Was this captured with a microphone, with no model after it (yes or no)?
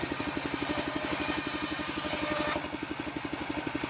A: yes